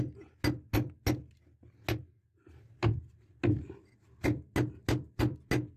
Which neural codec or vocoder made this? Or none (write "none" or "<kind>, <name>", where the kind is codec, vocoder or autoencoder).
none